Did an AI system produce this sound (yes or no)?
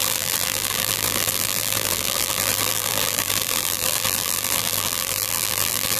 yes